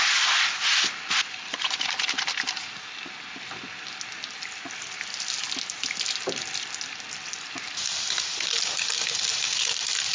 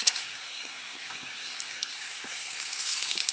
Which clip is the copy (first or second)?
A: second